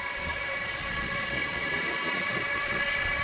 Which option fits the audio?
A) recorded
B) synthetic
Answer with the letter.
B